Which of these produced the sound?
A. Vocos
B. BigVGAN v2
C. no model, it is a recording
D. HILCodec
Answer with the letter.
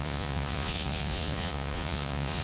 A